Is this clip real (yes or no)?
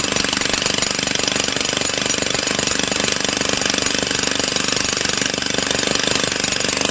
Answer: yes